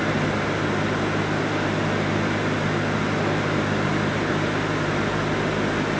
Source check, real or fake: real